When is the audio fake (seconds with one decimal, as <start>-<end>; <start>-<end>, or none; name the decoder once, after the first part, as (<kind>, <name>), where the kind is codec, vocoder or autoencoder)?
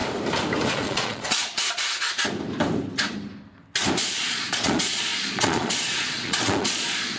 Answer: 0.7-1.6 (vocoder, Vocos); 4.2-7.2